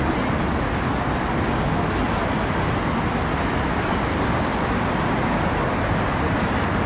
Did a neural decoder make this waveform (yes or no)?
no